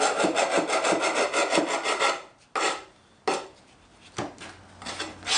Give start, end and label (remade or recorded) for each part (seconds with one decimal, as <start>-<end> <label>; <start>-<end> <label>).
0.0-5.4 recorded